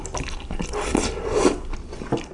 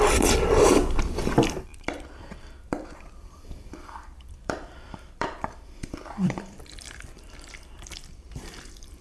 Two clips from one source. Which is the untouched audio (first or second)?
first